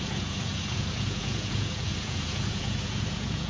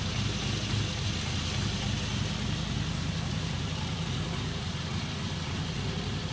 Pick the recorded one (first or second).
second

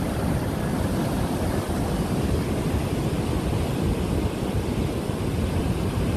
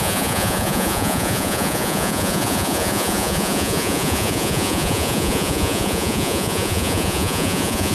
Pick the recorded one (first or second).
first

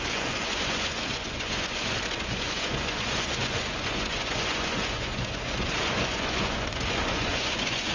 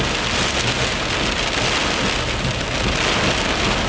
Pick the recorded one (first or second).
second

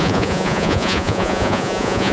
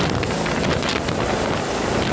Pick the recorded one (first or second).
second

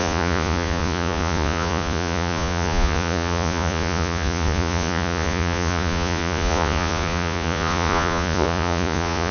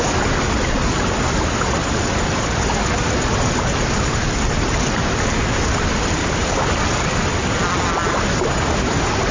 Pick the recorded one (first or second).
second